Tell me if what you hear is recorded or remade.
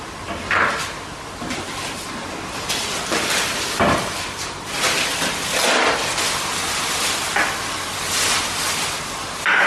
recorded